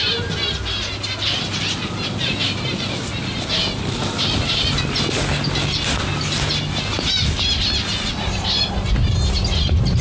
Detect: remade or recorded recorded